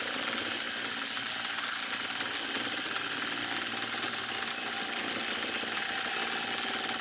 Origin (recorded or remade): recorded